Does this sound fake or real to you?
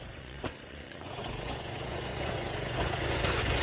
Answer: fake